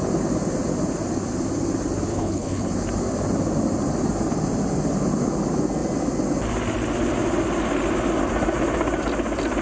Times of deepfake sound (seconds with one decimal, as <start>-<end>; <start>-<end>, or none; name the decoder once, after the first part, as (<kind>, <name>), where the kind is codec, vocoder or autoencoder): 2.1-2.7 (codec, HILCodec)